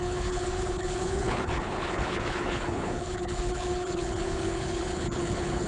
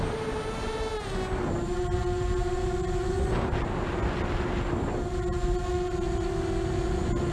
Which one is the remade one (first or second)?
first